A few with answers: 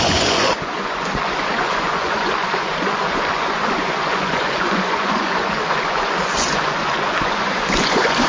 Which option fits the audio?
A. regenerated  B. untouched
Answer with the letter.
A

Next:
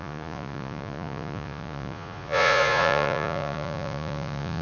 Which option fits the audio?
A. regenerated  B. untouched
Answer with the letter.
A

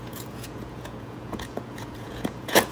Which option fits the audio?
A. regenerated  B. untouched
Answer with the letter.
A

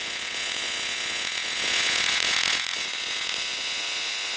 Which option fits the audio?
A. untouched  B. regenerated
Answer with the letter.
B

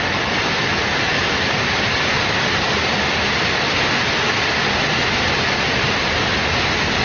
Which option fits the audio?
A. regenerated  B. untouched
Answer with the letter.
B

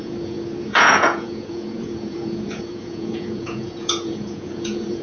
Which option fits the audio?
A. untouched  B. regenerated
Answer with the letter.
B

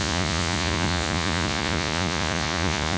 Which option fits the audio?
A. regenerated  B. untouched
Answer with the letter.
A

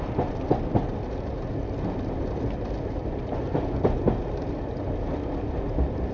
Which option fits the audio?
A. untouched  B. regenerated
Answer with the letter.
A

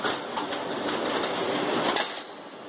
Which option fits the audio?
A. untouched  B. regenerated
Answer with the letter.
A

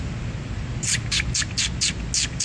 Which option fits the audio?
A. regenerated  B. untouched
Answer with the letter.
B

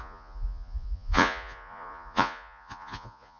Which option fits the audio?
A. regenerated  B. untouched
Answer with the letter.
A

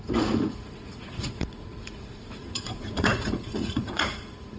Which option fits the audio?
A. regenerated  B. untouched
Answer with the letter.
A